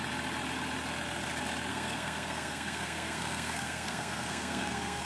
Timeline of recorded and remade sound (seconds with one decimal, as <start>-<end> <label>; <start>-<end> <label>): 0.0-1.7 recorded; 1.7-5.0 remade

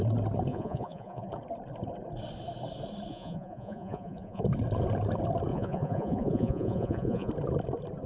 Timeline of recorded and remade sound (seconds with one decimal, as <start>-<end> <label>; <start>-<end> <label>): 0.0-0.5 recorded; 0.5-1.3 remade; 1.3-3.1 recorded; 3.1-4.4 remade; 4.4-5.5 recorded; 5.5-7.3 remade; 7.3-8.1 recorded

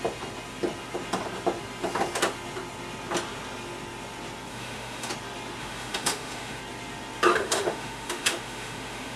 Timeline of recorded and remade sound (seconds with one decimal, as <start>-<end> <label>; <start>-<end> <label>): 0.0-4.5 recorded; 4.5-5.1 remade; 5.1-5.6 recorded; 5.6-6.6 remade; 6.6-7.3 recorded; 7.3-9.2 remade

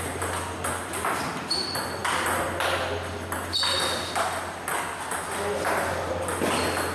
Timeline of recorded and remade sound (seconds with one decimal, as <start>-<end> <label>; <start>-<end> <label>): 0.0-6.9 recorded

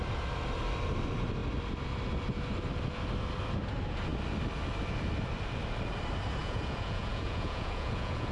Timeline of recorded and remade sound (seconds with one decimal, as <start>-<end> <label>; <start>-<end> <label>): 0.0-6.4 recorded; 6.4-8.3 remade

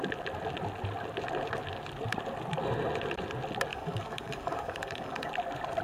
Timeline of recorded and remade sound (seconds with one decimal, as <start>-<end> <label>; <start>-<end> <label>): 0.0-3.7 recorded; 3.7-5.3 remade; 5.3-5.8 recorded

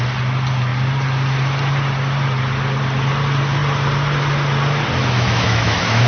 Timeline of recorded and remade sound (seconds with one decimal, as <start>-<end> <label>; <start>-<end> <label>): 0.0-5.0 recorded; 5.0-6.1 remade

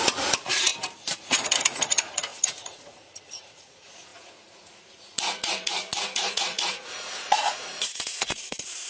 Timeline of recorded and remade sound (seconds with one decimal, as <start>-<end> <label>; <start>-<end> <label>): 0.0-0.7 remade; 0.7-1.2 recorded; 1.2-8.9 remade